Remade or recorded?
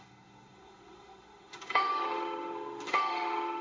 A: remade